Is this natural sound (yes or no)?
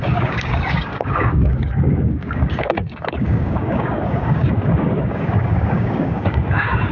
no